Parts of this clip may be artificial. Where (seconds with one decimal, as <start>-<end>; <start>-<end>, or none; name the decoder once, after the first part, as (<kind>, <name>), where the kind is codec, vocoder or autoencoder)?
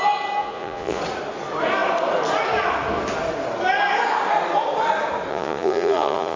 0.4-1.0 (vocoder, Vocos); 5.3-6.4